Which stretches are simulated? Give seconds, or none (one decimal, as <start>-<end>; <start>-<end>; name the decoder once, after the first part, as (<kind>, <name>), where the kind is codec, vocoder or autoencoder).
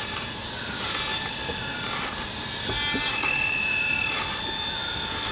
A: none